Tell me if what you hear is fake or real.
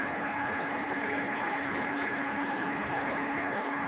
fake